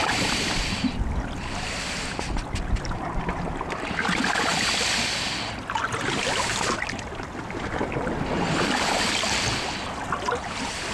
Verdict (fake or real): real